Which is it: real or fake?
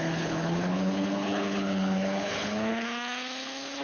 fake